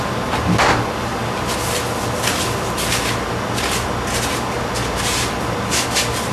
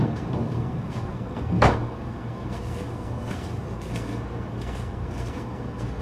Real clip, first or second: first